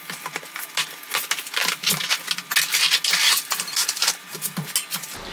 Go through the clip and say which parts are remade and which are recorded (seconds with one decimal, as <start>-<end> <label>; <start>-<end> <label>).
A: 0.0-5.3 recorded